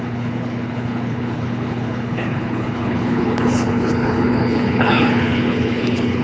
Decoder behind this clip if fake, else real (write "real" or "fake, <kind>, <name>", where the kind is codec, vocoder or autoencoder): fake, codec, HILCodec